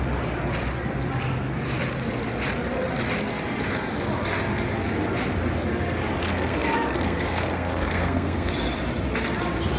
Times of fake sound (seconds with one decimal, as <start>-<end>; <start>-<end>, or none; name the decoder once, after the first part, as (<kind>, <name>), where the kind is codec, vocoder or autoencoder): 6.2-8.5 (codec, SNAC)